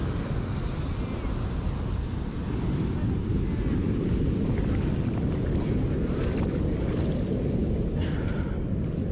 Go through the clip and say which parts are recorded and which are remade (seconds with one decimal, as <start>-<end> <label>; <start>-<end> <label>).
0.0-9.1 recorded

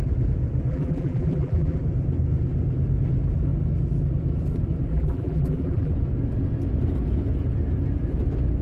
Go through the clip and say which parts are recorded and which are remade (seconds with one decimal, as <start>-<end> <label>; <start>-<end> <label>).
0.0-0.7 recorded; 0.7-1.8 remade; 1.8-4.9 recorded; 4.9-5.9 remade; 5.9-8.6 recorded

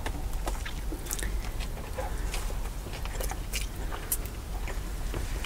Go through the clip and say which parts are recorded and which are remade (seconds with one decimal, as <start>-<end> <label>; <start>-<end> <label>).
0.0-5.5 recorded